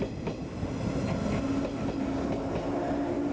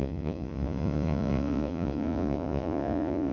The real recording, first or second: first